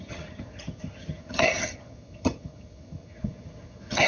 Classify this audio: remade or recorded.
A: remade